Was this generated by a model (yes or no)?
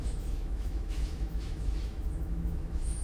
yes